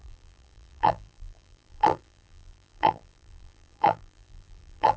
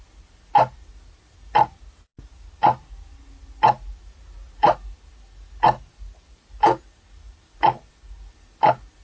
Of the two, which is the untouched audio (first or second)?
second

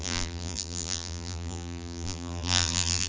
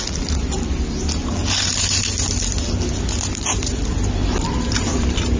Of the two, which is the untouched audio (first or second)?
second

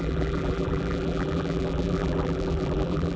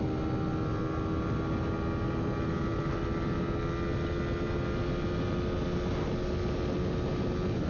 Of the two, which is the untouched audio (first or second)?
second